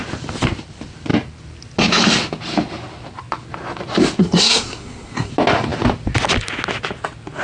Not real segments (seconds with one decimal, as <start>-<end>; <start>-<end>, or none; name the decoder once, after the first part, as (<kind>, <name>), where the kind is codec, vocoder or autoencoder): 4.2-5.3 (codec, SNAC)